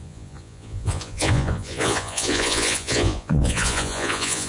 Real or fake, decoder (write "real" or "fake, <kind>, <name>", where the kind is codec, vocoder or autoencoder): fake, vocoder, Vocos